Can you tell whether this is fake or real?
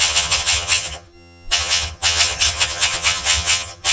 fake